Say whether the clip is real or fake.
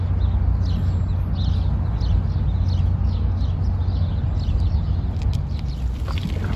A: real